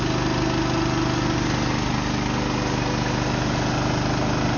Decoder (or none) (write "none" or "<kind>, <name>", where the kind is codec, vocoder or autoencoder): none